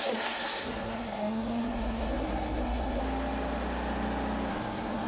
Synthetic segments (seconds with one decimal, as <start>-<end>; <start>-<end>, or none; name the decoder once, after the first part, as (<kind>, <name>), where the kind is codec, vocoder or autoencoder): 0.0-3.0 (codec, SNAC); 4.5-5.1